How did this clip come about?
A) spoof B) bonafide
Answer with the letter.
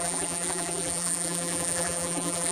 A